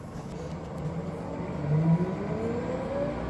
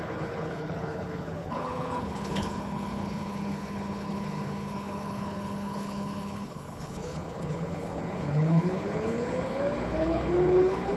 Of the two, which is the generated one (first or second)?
second